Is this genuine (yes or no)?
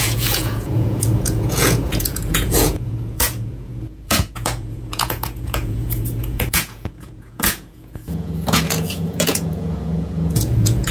no